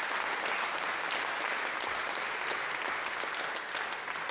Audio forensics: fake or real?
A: real